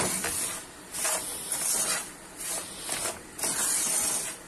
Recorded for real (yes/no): yes